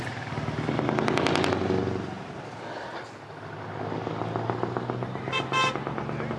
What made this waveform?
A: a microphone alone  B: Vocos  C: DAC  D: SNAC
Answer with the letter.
A